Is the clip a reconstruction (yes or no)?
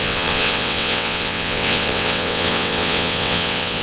yes